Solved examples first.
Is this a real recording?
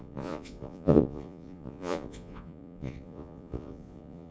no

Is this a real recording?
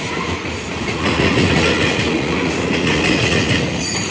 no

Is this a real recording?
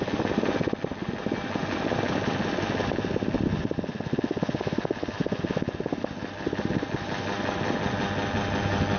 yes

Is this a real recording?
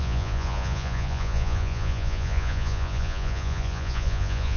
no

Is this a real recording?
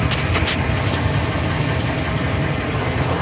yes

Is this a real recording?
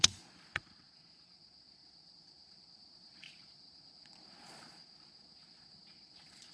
no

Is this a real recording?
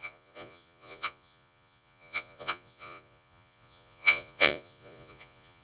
no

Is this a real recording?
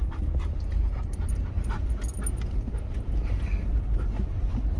yes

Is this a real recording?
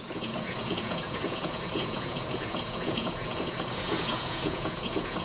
no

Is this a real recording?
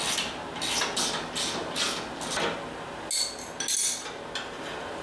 yes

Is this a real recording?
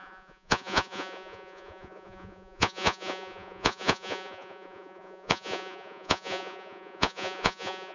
no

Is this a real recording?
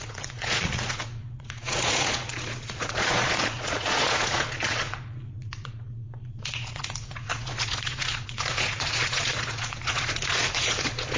no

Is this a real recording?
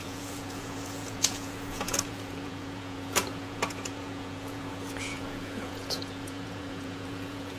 no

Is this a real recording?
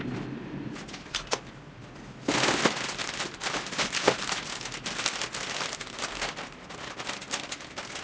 yes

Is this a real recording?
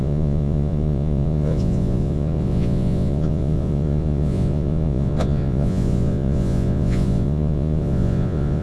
no